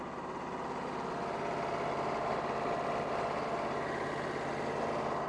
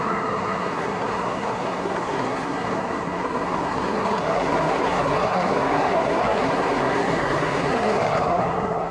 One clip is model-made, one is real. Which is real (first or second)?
first